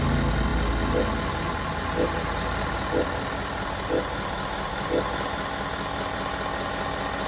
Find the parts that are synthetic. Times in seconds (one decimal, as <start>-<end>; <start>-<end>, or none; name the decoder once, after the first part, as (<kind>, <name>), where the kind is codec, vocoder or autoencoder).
none